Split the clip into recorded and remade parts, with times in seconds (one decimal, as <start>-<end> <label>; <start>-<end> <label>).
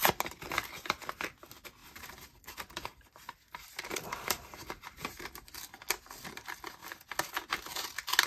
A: 0.0-1.8 recorded; 1.8-5.6 remade; 5.6-8.3 recorded